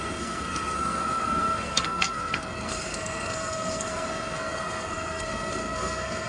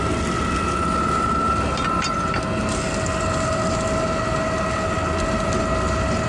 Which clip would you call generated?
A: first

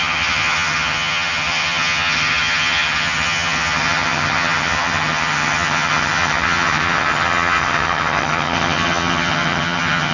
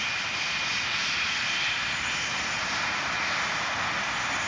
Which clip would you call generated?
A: first